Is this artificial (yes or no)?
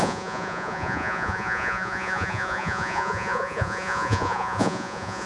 yes